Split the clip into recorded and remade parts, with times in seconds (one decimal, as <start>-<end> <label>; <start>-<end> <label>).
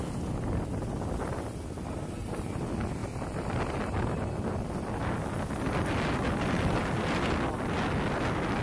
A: 0.0-8.6 recorded